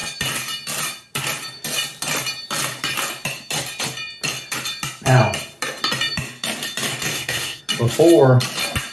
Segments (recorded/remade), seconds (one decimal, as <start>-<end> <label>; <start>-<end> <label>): 0.0-7.1 recorded; 7.1-7.6 remade; 7.6-8.9 recorded